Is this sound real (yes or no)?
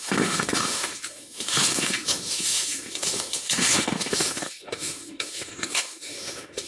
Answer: no